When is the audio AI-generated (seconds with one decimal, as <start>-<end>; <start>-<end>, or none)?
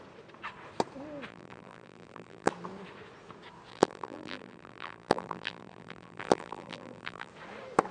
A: 1.3-2.5; 3.7-7.3